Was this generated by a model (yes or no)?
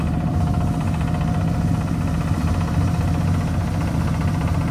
no